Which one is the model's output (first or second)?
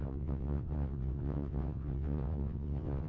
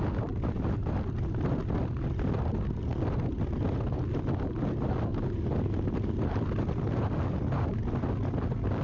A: first